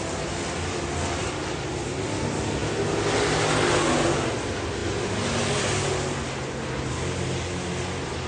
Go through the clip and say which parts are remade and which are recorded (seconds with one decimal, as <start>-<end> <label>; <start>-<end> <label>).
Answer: 0.0-8.3 recorded